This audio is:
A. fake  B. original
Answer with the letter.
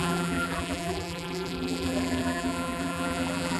A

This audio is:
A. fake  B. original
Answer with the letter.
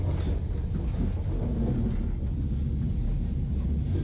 B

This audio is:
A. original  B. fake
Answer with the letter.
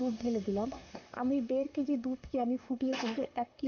B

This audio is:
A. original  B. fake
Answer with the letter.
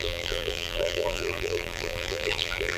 B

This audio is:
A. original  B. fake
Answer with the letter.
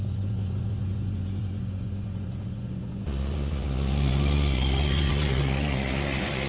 B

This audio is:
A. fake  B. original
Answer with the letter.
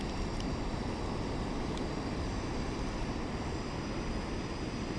B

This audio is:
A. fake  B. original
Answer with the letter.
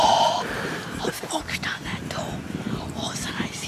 B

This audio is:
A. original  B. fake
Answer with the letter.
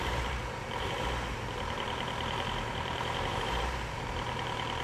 B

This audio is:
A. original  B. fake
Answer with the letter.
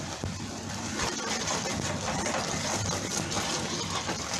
B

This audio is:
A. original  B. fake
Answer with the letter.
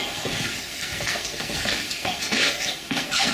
B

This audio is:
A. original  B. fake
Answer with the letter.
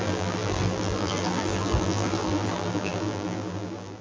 B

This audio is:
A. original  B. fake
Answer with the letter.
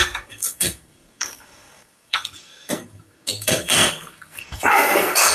B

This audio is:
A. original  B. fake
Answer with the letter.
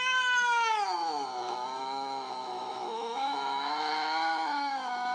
B